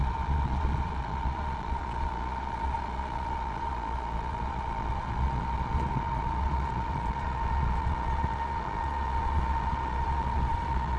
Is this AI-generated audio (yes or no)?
yes